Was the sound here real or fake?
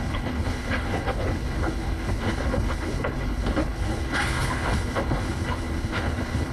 fake